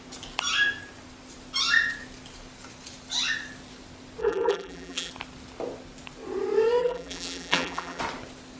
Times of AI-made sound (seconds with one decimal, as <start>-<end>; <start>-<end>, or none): 4.2-5.1; 6.8-8.0